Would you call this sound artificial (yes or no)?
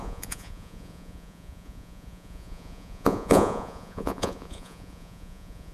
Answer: yes